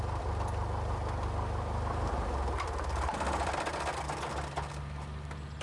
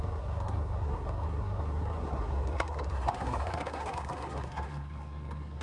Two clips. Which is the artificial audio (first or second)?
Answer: second